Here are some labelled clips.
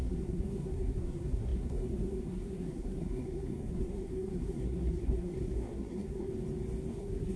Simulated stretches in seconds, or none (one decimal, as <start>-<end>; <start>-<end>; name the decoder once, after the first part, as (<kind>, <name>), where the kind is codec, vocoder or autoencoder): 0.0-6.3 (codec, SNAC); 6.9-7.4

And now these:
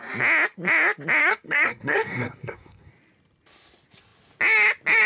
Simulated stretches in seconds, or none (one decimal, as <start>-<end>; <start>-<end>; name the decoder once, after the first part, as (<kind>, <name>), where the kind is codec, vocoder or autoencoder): 1.2-2.9 (codec, SNAC)

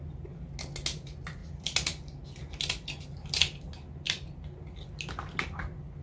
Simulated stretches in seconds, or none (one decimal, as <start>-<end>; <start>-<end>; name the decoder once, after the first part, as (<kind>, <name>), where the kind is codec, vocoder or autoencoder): none

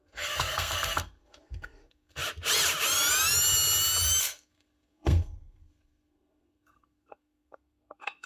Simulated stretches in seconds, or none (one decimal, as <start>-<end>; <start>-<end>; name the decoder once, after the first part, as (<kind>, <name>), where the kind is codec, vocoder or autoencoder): 0.0-2.2 (codec, SNAC); 4.2-8.3

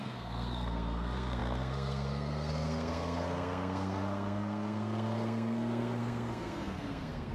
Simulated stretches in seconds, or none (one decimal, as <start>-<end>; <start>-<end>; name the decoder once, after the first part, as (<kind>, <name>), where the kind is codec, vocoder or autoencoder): 0.0-7.3 (codec, SNAC)

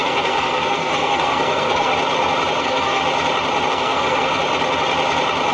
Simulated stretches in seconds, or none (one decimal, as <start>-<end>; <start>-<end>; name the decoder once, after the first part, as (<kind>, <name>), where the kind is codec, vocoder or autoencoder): 0.0-1.9 (codec, SNAC); 2.6-3.0; 3.7-4.4

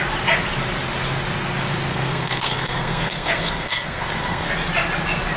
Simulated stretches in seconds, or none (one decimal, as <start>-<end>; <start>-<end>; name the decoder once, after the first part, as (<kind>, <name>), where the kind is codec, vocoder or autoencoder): 1.9-4.5 (codec, SNAC)